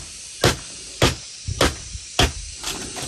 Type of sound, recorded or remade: recorded